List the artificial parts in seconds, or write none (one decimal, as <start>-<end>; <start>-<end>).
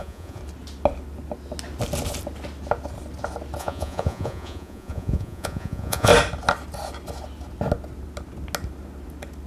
0.0-0.4; 3.6-6.1